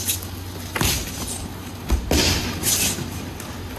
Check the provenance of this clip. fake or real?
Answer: real